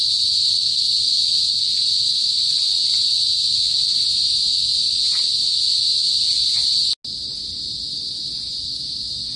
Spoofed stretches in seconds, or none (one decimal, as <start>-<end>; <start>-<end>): none